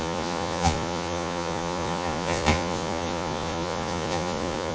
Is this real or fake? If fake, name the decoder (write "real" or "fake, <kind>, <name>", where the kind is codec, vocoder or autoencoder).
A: fake, vocoder, Vocos